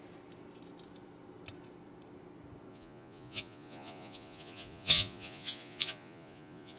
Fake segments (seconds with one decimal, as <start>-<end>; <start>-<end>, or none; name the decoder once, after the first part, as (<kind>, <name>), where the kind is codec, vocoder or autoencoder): 2.7-6.8 (vocoder, Vocos)